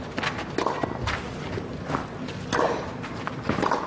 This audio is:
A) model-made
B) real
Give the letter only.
B